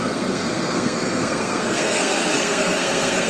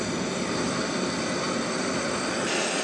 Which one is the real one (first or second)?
second